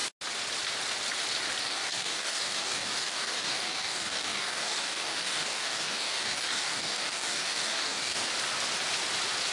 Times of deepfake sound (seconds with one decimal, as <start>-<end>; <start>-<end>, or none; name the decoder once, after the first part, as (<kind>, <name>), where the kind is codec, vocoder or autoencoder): 1.6-8.3 (codec, DAC)